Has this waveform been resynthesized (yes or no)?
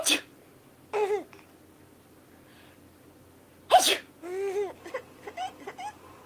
no